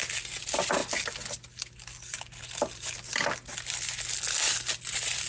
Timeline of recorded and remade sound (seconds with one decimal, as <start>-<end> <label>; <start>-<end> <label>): 0.0-5.3 recorded